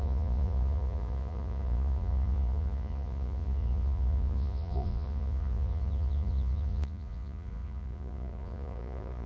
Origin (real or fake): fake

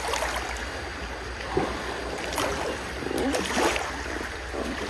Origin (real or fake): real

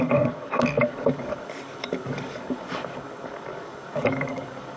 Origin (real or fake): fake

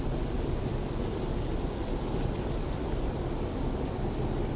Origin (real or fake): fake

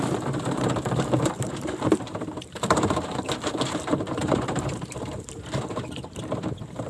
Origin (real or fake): fake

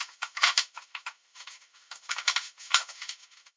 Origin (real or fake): fake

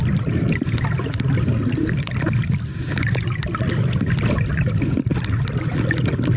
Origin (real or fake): real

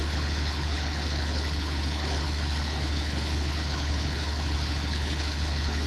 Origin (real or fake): fake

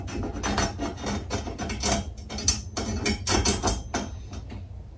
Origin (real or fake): real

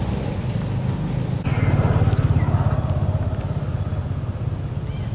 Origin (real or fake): real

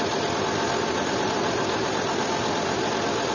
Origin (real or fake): real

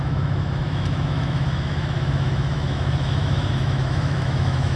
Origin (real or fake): fake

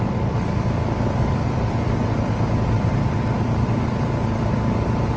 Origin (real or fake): fake